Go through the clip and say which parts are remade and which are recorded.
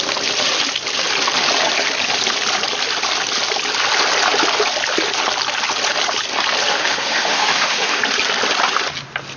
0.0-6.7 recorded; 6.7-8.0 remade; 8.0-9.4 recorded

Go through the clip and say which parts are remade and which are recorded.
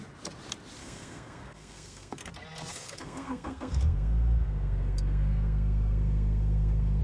0.0-0.8 recorded; 0.8-2.3 remade; 2.3-2.7 recorded; 2.7-7.0 remade